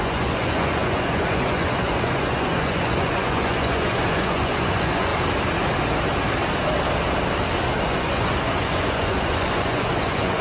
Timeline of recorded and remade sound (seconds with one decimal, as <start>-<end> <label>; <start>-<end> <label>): 0.0-5.1 remade; 5.1-7.8 recorded; 7.8-10.4 remade